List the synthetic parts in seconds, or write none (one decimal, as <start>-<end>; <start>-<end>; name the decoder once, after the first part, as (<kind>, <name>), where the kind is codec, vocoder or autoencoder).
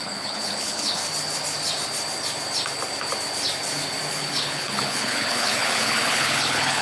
0.0-1.0 (codec, HILCodec); 4.1-6.8